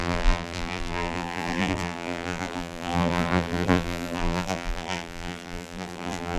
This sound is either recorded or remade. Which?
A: remade